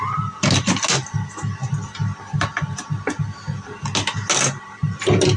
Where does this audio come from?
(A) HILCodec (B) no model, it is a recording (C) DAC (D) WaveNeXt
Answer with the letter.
B